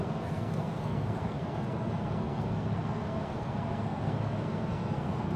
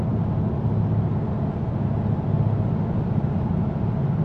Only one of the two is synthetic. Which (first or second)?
first